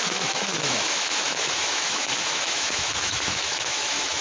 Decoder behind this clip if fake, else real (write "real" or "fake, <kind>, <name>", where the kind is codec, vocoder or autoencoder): fake, autoencoder, DAC-VAE